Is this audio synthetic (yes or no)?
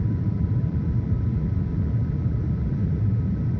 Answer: yes